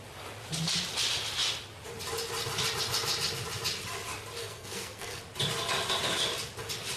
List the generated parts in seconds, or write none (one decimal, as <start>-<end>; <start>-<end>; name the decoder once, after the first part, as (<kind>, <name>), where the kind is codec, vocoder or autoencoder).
4.4-5.2 (codec, SNAC)